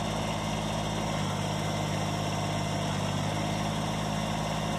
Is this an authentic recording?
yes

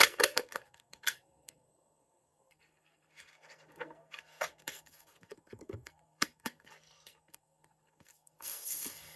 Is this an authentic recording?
no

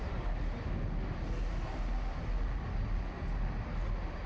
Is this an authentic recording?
yes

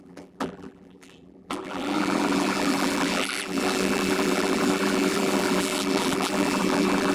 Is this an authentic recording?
no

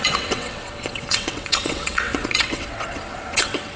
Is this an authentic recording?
no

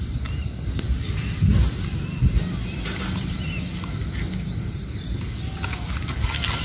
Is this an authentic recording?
yes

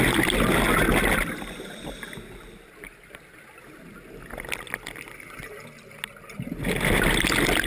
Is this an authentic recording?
yes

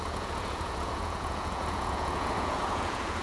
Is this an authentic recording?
no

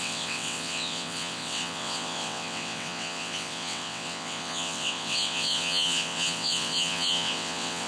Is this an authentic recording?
no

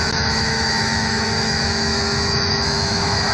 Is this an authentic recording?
no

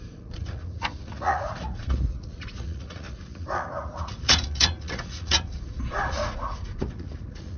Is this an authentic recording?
no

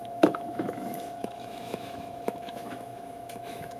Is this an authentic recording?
no